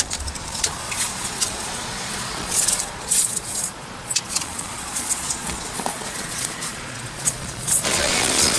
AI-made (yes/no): yes